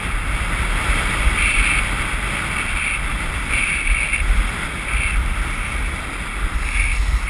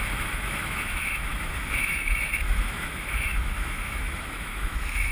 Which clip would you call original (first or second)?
first